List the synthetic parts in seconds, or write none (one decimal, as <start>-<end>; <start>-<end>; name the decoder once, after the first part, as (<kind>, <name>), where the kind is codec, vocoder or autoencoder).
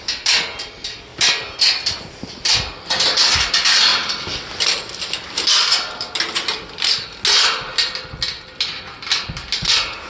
none